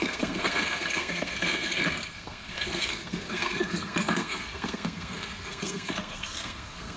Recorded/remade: remade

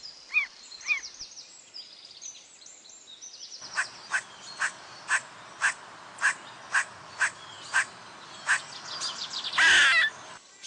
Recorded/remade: recorded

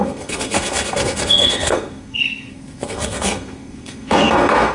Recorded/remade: remade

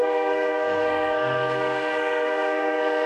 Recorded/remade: remade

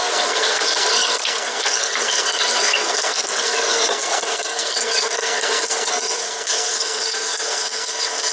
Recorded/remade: remade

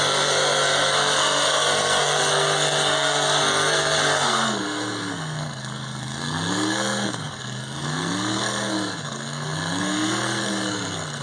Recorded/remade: remade